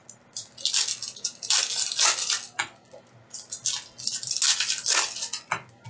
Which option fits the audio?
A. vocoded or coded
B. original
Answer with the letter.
B